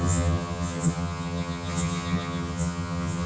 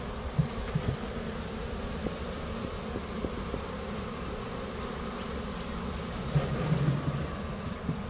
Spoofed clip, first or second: first